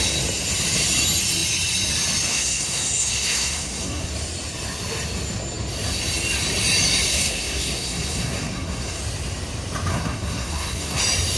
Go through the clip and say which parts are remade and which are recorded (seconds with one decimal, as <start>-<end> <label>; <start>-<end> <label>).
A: 0.0-2.3 recorded; 2.3-4.1 remade; 4.1-7.1 recorded; 7.1-9.0 remade; 9.0-9.9 recorded; 9.9-11.0 remade; 11.0-11.4 recorded